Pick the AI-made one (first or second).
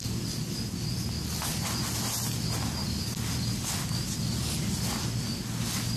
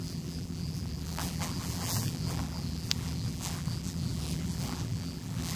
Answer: second